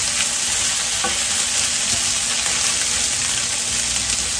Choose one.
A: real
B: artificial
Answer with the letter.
A